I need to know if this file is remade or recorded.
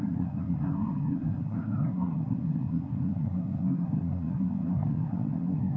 remade